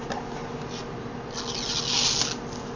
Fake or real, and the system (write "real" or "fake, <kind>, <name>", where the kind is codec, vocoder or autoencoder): real